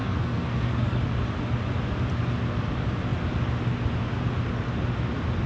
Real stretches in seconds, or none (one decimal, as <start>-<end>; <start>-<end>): 1.0-5.5